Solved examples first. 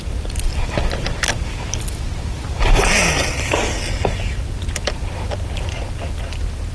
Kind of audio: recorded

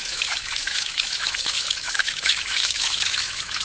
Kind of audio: remade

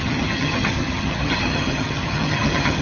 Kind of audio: remade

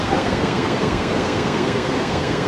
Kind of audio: remade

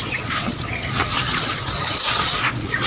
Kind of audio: remade